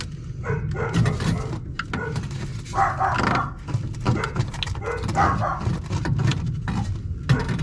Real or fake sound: real